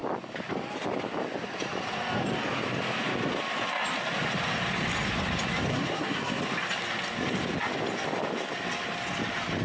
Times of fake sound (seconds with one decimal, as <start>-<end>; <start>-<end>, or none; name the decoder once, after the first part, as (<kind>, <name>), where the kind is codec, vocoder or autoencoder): 5.7-6.4 (codec, SNAC)